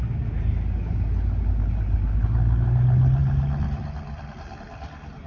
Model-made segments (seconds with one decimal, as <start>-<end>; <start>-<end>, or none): none